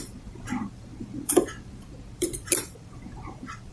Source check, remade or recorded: remade